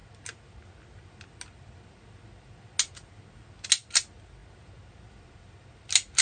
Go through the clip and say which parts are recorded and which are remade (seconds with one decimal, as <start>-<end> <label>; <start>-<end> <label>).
0.0-6.2 recorded